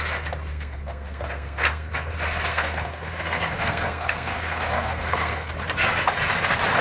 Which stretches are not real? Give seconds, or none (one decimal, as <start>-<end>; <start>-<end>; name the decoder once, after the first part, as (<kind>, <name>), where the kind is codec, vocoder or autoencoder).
0.5-2.1 (codec, SNAC); 2.5-5.5